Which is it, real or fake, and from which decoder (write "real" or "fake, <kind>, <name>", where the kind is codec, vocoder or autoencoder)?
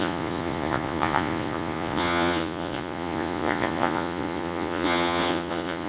fake, vocoder, Vocos